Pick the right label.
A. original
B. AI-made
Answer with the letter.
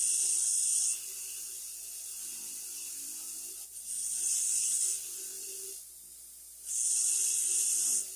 A